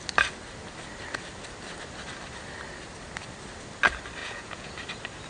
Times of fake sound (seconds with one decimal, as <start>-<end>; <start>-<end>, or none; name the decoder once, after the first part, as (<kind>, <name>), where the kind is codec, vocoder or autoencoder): 4.2-4.7 (vocoder, Vocos)